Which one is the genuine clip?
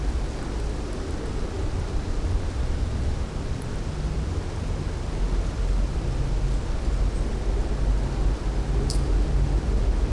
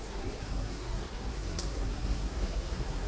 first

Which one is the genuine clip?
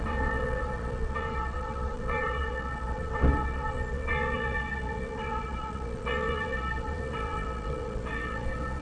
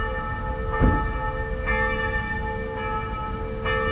second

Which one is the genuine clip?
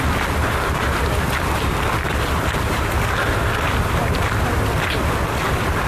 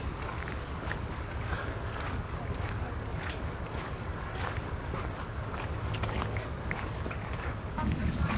first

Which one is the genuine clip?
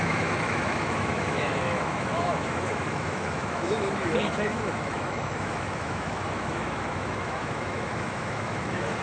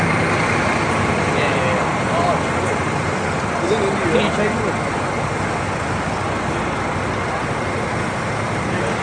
second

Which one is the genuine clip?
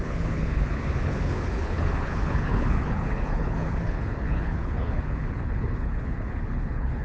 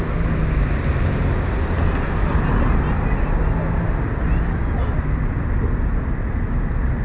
second